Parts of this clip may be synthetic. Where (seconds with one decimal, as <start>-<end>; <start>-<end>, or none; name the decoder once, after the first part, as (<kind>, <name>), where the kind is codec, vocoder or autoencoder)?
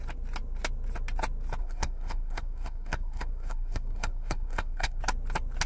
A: 1.6-5.0 (codec, SNAC)